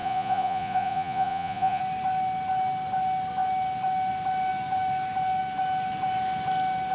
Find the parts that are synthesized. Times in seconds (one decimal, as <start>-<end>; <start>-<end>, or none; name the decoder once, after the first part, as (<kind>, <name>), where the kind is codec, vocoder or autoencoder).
0.0-1.8 (vocoder, Vocos)